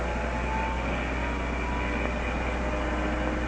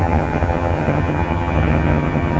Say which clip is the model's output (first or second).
second